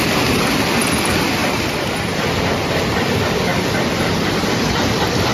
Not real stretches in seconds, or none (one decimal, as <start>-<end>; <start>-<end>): 0.0-5.3